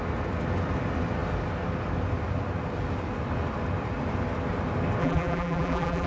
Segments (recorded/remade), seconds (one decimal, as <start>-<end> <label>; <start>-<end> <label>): 0.0-5.0 recorded; 5.0-6.1 remade